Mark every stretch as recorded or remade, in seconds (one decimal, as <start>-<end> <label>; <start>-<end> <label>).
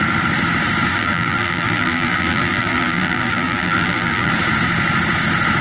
0.0-0.9 recorded; 0.9-4.3 remade; 4.3-5.6 recorded